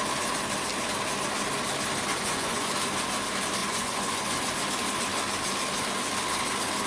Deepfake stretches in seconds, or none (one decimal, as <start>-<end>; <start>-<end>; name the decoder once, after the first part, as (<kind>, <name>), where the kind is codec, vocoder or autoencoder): 2.1-2.7 (vocoder, Vocos); 3.6-4.5